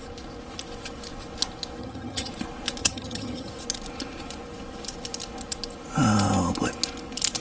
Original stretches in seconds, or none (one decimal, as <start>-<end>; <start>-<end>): 0.0-1.8; 2.3-2.8; 3.5-7.4